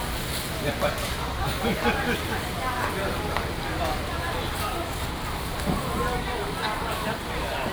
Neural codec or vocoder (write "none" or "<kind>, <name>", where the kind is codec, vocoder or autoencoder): none